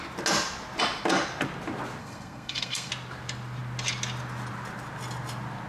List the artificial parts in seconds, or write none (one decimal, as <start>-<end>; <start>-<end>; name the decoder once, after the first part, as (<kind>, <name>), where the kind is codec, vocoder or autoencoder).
2.0-2.9 (codec, SNAC)